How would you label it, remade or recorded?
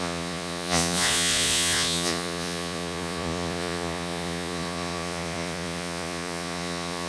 remade